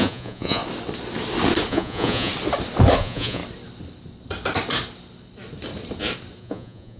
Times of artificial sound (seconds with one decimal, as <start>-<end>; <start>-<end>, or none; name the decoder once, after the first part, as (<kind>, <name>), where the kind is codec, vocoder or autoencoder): 0.0-0.6 (vocoder, Vocos); 1.7-2.3; 3.0-3.4; 6.4-7.0